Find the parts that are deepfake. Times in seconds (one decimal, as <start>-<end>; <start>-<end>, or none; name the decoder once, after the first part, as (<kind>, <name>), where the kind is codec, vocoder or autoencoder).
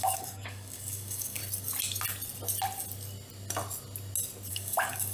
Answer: 0.0-1.4 (codec, DAC); 4.5-5.1